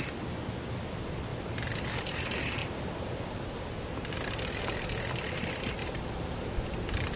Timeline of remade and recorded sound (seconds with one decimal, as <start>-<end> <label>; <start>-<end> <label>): 0.0-2.6 recorded; 2.6-3.3 remade; 3.3-5.8 recorded; 5.8-6.5 remade; 6.5-7.2 recorded